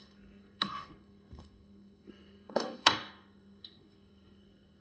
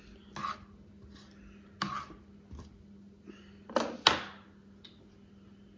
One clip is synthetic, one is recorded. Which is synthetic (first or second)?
first